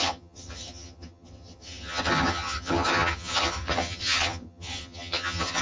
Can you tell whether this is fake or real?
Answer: fake